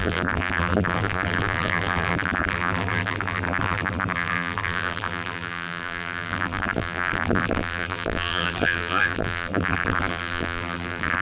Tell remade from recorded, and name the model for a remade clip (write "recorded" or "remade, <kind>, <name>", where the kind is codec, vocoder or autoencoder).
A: remade, vocoder, BigVGAN v2